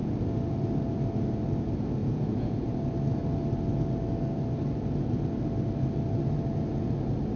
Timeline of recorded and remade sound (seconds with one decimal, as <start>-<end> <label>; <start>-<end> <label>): 0.0-2.0 recorded; 2.0-2.7 remade; 2.7-7.4 recorded